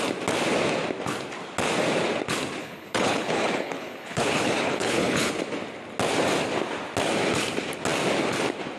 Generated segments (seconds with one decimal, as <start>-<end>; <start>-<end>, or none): 2.6-5.3